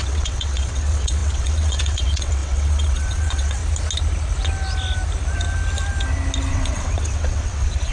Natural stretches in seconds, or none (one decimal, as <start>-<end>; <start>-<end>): 3.6-6.5

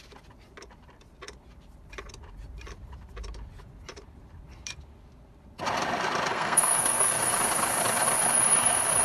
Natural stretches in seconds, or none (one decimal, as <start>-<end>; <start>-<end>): 0.0-6.3; 7.3-9.0

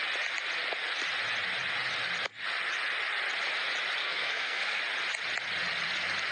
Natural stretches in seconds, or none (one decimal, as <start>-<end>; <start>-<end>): 0.0-4.0; 4.8-6.3

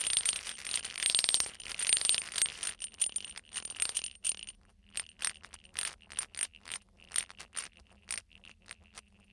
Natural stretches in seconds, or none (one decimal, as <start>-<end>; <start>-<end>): 0.0-9.3

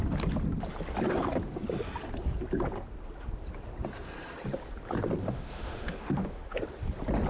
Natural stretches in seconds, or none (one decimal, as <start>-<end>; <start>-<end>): 0.0-5.2; 6.6-7.3

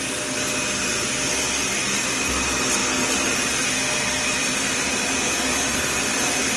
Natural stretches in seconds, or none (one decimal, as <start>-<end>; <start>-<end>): 0.0-6.6

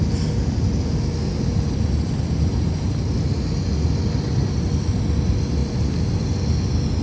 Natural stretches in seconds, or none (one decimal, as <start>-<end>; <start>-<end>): 0.0-7.0

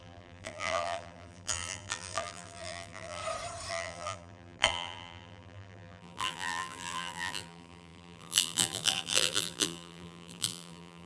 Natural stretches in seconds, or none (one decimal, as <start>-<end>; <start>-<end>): 3.2-3.7